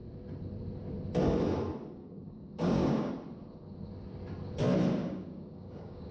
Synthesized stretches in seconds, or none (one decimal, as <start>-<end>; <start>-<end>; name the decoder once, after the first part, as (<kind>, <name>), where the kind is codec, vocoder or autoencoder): 2.0-3.1 (codec, DAC); 5.0-6.1